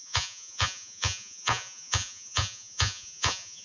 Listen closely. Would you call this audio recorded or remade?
remade